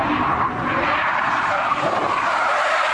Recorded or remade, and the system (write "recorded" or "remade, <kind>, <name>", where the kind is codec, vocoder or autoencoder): remade, vocoder, BigVGAN v2